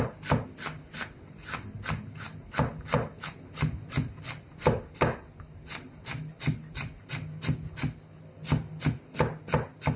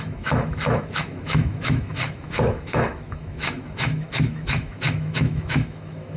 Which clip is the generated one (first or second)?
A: second